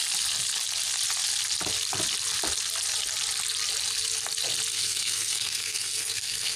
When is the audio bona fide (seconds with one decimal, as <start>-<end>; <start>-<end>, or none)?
0.0-4.7